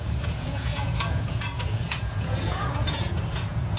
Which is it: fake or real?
fake